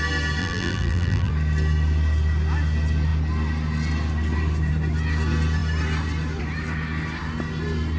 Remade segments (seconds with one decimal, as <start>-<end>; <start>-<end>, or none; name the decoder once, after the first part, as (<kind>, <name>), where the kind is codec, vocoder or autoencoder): 0.4-1.3 (vocoder, BigVGAN v2)